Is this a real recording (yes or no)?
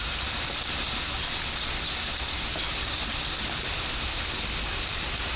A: yes